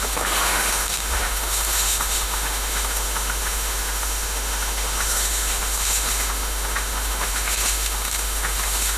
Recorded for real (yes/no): no